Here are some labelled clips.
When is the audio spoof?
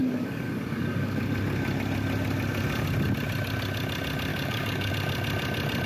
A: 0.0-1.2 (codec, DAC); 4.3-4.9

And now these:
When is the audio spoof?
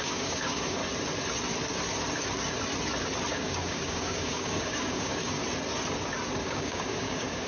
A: 0.0-0.8 (codec, DAC); 3.3-5.4; 6.4-7.5